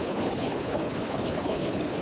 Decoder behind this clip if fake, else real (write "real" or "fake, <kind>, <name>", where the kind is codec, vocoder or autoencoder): fake, codec, HILCodec